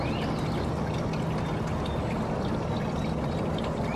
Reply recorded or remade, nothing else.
recorded